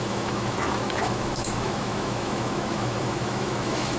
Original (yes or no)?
no